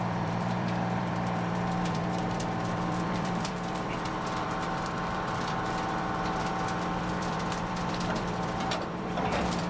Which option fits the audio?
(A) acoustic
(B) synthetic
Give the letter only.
B